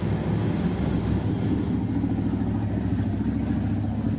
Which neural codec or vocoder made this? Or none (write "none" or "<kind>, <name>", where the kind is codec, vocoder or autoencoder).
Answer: none